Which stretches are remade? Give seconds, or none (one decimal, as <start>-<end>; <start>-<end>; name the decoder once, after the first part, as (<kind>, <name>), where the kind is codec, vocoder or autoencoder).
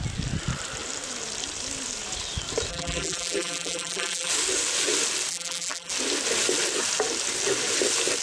2.7-4.3 (vocoder, BigVGAN v2); 5.3-5.9